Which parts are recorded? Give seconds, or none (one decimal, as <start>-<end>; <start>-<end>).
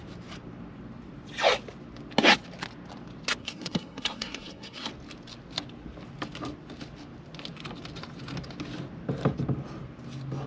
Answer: 0.0-3.4; 4.9-10.5